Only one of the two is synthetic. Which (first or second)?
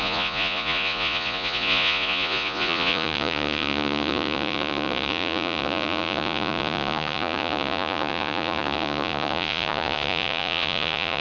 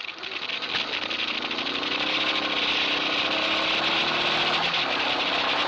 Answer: first